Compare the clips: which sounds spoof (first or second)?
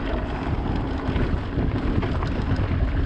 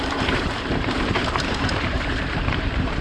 second